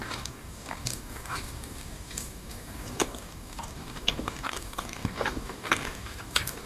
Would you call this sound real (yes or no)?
no